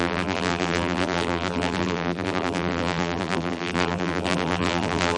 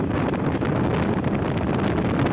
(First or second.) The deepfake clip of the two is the first